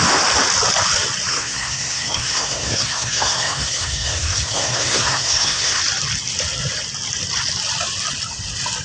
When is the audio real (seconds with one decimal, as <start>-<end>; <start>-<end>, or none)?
0.0-1.3; 5.8-8.8